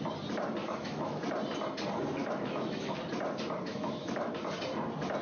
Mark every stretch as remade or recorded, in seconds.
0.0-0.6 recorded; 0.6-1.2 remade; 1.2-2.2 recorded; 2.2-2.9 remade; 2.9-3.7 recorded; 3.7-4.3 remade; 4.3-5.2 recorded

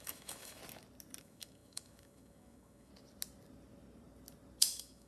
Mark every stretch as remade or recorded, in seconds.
0.0-0.6 remade; 0.6-1.2 recorded; 1.2-2.9 remade; 2.9-4.6 recorded; 4.6-5.1 remade

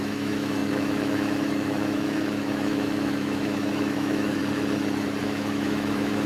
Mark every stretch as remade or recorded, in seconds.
0.0-4.4 remade; 4.4-5.2 recorded; 5.2-6.3 remade

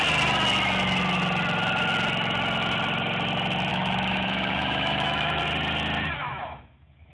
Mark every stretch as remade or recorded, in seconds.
0.0-3.7 recorded; 3.7-5.4 remade; 5.4-6.2 recorded; 6.2-7.1 remade

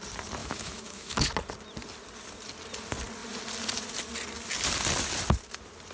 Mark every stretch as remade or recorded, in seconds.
0.0-0.4 recorded; 0.4-1.3 remade; 1.3-5.9 recorded